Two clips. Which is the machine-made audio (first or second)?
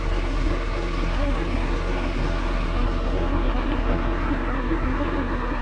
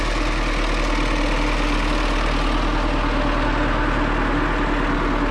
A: first